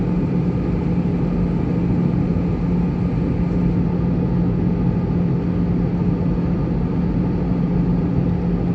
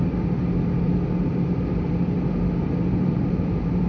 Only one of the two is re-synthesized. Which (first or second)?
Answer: second